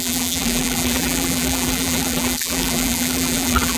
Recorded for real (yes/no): no